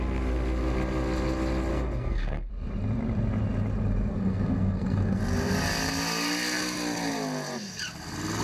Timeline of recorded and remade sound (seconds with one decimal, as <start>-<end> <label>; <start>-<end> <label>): 0.0-1.7 recorded; 1.7-2.5 remade; 2.5-4.1 recorded; 4.1-5.2 remade; 5.2-8.4 recorded